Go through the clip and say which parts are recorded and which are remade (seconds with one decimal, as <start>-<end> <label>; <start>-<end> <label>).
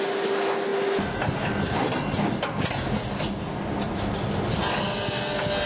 0.0-5.7 recorded